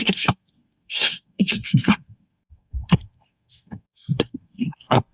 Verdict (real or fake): fake